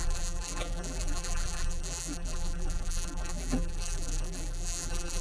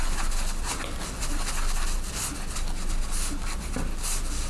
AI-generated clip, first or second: first